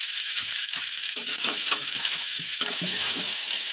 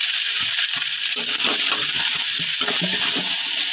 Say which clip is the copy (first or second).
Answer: first